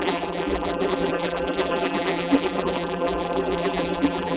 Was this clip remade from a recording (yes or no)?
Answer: yes